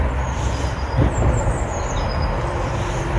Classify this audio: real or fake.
fake